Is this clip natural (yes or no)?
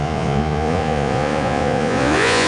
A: no